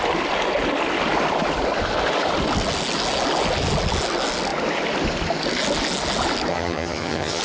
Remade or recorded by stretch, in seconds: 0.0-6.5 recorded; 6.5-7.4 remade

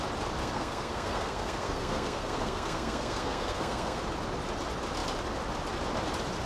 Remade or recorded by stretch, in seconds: 0.0-0.4 recorded; 0.4-4.0 remade; 4.0-6.5 recorded

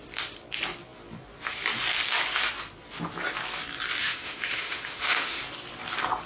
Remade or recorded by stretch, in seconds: 0.0-4.0 recorded; 4.0-5.4 remade; 5.4-6.3 recorded

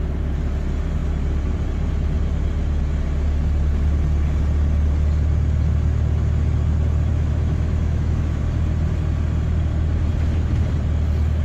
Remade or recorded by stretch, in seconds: 0.0-7.1 recorded; 7.1-8.4 remade; 8.4-11.4 recorded